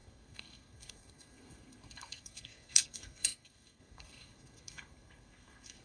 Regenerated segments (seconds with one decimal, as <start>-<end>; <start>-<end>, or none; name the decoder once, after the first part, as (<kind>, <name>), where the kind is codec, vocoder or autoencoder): 0.0-5.8 (codec, SNAC)